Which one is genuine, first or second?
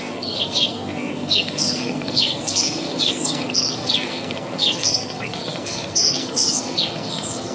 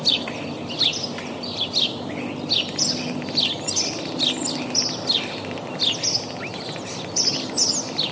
second